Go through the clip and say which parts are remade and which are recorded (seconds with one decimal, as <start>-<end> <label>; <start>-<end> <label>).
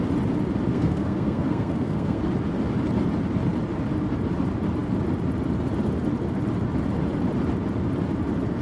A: 0.0-0.7 recorded; 0.7-2.2 remade; 2.2-8.6 recorded